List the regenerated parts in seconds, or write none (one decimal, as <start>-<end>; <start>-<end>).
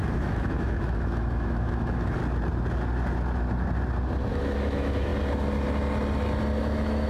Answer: 0.0-2.2; 4.3-5.1; 6.6-7.1